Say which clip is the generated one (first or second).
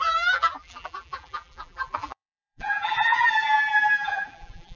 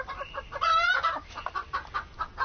first